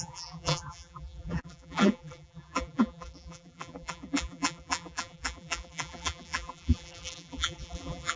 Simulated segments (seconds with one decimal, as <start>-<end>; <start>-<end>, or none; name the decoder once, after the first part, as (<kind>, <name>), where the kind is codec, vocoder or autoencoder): 0.0-8.2 (vocoder, BigVGAN v2)